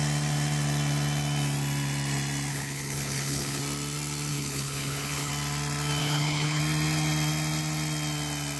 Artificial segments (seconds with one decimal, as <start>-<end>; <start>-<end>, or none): 2.5-3.6; 4.3-5.3; 6.0-6.6